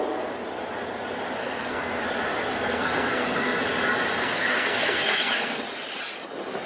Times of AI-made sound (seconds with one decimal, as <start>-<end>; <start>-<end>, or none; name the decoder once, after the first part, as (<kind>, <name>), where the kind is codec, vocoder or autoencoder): 1.4-2.0 (codec, SNAC); 2.5-3.6; 4.2-5.6